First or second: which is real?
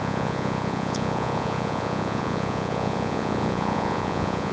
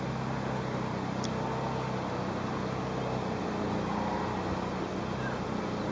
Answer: second